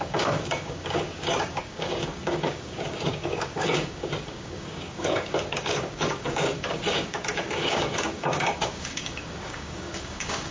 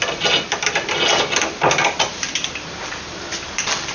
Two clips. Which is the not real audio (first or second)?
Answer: first